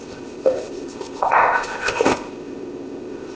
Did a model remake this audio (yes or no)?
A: yes